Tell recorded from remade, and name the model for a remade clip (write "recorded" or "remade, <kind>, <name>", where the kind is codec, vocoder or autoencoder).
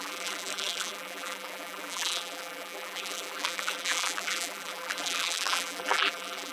remade, vocoder, BigVGAN v2